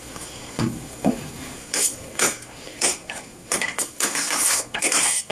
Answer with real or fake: fake